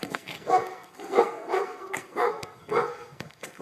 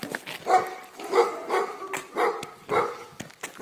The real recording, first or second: second